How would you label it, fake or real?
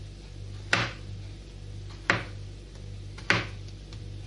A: real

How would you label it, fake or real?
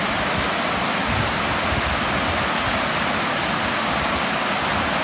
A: real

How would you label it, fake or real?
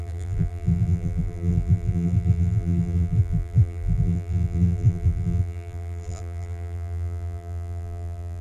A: fake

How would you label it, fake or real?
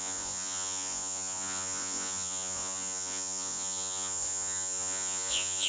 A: fake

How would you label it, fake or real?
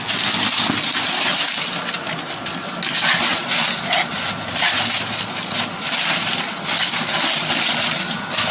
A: real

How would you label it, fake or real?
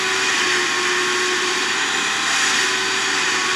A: real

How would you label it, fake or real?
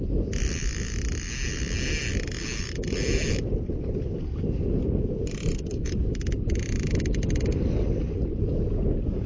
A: real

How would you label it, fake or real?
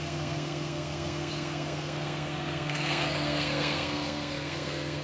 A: fake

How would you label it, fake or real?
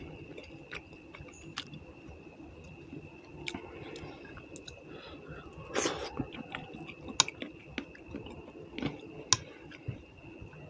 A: real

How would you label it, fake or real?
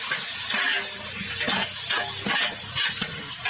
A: real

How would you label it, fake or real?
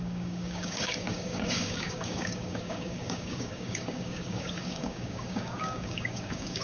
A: fake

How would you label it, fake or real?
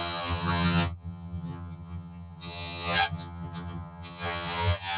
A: fake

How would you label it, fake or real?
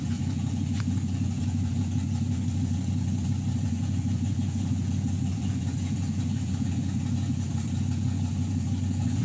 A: fake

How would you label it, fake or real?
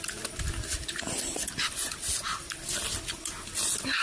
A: real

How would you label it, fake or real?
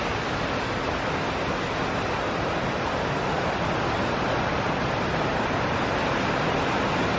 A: real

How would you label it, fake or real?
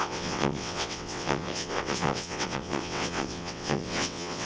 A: fake